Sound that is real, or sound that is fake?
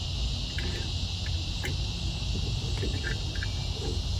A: real